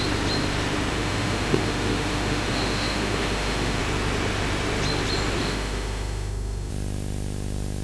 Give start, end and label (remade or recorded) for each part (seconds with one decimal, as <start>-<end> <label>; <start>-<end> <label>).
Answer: 0.0-0.9 recorded; 0.9-3.8 remade; 3.8-5.4 recorded; 5.4-6.7 remade; 6.7-7.8 recorded

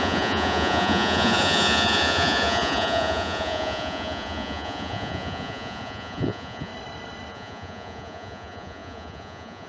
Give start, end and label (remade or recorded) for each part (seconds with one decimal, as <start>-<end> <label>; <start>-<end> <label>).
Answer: 0.0-6.7 remade; 6.7-7.3 recorded; 7.3-9.7 remade

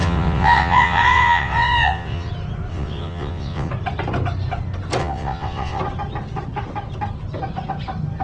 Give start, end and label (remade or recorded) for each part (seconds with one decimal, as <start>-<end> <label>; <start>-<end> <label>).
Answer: 0.0-2.3 remade; 2.3-2.7 recorded; 2.7-3.7 remade; 3.7-5.0 recorded; 5.0-5.8 remade; 5.8-8.2 recorded

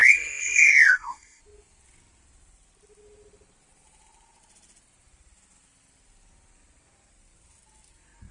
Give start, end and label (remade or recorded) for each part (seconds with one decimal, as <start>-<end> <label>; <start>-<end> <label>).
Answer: 0.0-1.4 remade; 1.4-8.3 recorded

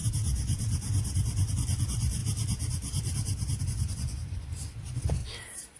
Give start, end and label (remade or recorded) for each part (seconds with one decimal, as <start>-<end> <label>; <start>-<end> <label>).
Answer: 0.0-1.5 recorded; 1.5-2.2 remade; 2.2-3.6 recorded; 3.6-5.2 remade; 5.2-5.8 recorded

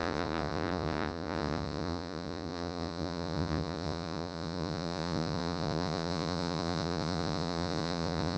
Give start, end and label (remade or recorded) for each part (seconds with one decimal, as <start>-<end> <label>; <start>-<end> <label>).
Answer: 0.0-8.4 remade

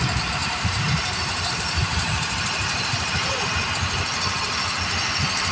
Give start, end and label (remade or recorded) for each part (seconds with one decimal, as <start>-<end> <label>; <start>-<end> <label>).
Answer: 0.0-0.4 recorded; 0.4-3.7 remade; 3.7-5.5 recorded

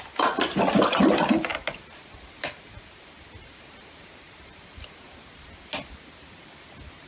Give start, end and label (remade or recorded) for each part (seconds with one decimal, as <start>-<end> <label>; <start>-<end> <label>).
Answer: 0.0-1.5 recorded; 1.5-5.7 remade; 5.7-7.1 recorded